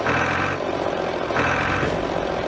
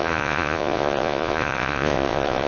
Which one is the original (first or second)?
first